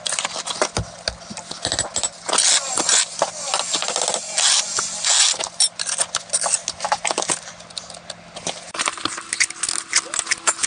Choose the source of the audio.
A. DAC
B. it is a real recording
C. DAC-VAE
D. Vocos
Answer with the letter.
B